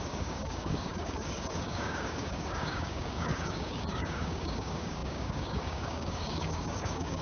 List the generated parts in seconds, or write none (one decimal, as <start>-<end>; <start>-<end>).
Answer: 0.0-7.2